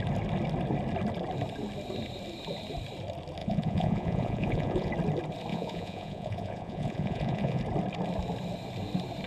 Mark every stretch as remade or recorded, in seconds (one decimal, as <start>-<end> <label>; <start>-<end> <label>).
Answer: 0.0-3.4 recorded; 3.4-4.9 remade; 4.9-5.5 recorded; 5.5-7.6 remade; 7.6-9.3 recorded